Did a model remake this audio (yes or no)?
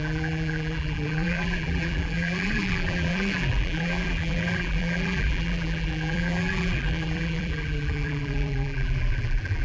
yes